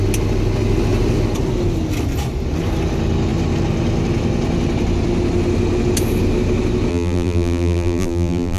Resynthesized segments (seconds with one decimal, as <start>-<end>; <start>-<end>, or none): 6.9-8.6